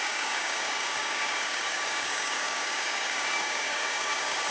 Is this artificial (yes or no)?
yes